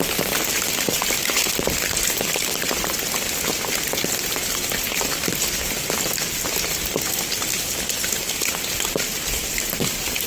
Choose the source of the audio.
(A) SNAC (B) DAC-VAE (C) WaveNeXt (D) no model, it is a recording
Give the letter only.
D